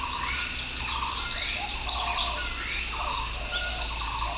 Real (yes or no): yes